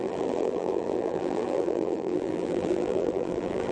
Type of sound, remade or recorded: remade